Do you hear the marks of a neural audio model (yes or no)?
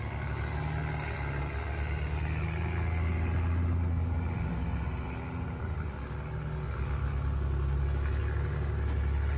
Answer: no